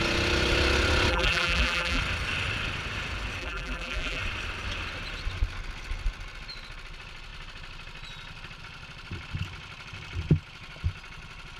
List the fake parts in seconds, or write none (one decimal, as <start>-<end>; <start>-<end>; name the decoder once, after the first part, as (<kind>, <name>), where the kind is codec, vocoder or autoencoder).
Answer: 1.1-2.0 (vocoder, BigVGAN v2); 3.4-4.2